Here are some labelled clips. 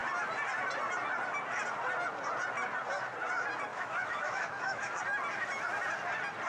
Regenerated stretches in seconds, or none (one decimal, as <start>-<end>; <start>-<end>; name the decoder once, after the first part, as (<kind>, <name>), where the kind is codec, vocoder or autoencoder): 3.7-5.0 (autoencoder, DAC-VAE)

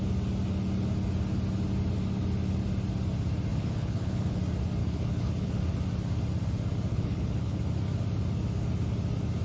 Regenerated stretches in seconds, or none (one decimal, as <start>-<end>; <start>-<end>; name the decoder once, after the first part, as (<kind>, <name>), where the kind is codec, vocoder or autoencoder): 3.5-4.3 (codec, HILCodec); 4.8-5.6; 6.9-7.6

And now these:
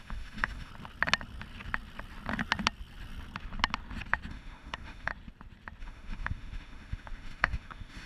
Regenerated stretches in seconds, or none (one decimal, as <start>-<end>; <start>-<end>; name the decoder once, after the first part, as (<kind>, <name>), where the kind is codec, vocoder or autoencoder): 0.0-0.7 (autoencoder, DAC-VAE); 4.3-5.1; 5.8-8.1

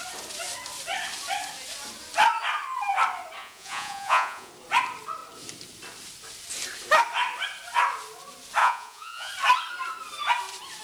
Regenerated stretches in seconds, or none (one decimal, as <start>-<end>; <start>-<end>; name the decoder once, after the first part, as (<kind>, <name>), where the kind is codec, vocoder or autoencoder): 3.4-4.5 (vocoder, Vocos); 8.6-9.3